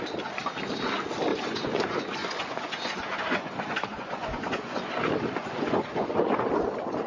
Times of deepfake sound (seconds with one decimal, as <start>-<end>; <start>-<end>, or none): 1.3-4.9; 5.4-6.2